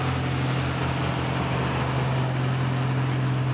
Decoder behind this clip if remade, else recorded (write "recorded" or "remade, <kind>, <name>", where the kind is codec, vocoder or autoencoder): recorded